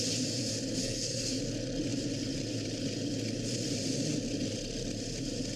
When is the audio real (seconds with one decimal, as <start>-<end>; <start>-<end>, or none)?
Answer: 0.0-0.8; 1.4-5.6